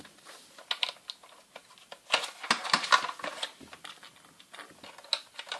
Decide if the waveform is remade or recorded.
recorded